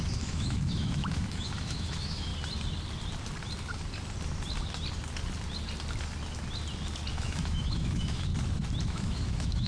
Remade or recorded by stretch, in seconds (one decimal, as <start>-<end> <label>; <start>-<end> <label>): 0.0-2.3 remade; 2.3-7.1 recorded; 7.1-8.3 remade; 8.3-8.8 recorded; 8.8-9.7 remade